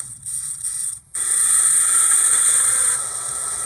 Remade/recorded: remade